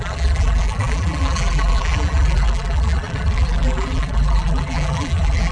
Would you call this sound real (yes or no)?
no